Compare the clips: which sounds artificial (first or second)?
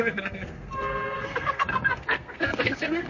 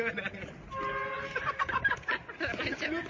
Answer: first